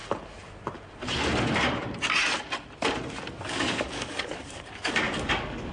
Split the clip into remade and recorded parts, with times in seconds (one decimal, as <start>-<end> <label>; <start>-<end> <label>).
0.0-3.4 recorded; 3.4-5.7 remade